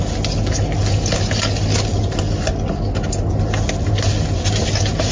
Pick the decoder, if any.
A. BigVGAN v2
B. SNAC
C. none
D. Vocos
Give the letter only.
C